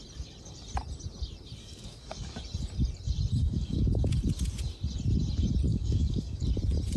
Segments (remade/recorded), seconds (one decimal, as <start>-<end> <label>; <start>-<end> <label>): 0.0-1.6 recorded; 1.6-2.4 remade; 2.4-3.4 recorded; 3.4-3.9 remade; 3.9-5.7 recorded; 5.7-6.4 remade; 6.4-7.0 recorded